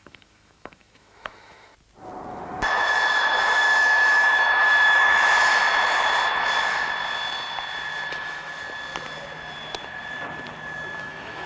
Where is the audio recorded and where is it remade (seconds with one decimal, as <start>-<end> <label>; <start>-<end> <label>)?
0.0-1.7 remade; 1.7-3.1 recorded; 3.1-5.5 remade; 5.5-8.1 recorded; 8.1-8.5 remade; 8.5-11.0 recorded; 11.0-11.5 remade